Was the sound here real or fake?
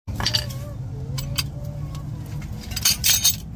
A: real